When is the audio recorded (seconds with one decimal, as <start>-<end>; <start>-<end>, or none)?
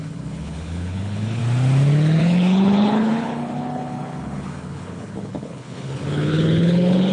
1.4-2.2